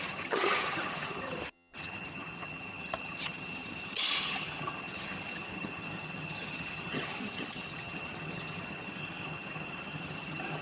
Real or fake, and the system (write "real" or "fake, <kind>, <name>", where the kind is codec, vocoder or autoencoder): fake, vocoder, HiFi-GAN